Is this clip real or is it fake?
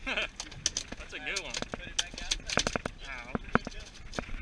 real